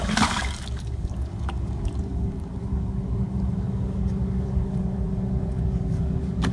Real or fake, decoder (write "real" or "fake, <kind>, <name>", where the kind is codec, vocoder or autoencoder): fake, codec, DAC